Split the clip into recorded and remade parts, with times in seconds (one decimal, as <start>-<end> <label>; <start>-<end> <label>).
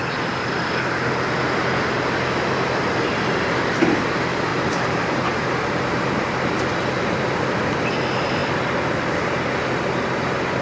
0.0-3.1 recorded; 3.1-4.0 remade; 4.0-4.5 recorded; 4.5-5.7 remade; 5.7-10.6 recorded